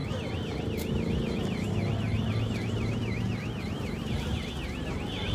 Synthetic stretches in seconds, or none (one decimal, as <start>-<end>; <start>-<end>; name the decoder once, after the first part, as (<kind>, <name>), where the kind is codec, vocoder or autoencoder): none